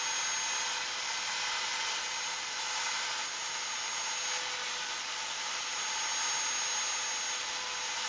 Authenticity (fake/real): real